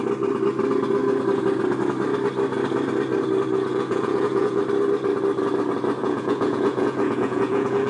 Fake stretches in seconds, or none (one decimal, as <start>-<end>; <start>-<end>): 3.7-4.6; 6.0-7.9